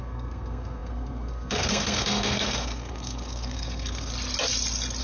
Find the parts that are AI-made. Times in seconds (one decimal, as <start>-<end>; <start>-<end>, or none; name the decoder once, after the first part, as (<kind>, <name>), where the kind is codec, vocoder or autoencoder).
0.0-4.1 (codec, SNAC)